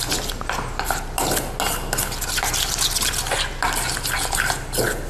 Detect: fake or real real